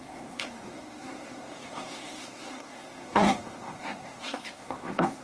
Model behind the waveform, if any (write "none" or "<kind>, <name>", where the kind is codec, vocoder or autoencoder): codec, SNAC